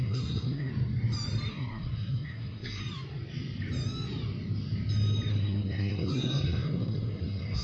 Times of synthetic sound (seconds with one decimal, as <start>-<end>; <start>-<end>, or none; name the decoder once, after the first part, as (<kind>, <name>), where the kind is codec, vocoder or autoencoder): 0.0-0.7 (codec, SNAC); 1.5-2.8; 5.3-7.6